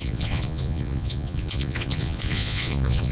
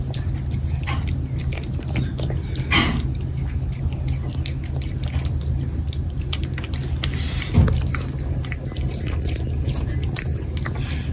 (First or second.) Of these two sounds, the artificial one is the first